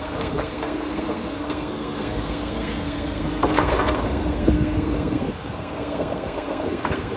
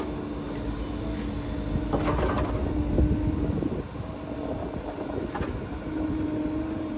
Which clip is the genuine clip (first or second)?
second